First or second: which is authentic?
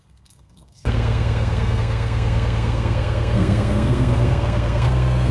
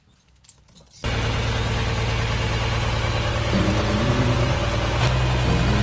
second